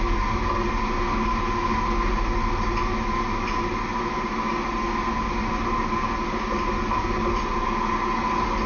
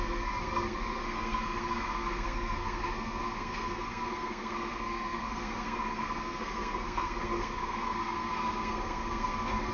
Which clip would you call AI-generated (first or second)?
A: second